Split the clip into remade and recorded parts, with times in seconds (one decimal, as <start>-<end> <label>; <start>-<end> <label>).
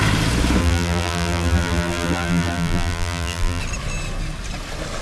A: 0.0-0.6 recorded; 0.6-3.6 remade; 3.6-5.0 recorded